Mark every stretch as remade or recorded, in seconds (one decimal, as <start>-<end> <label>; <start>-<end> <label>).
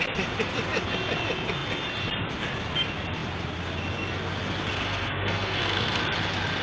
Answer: 0.0-4.7 recorded; 4.7-6.0 remade; 6.0-6.6 recorded